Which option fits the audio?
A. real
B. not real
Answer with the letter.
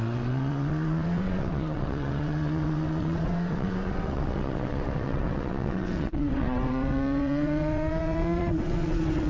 B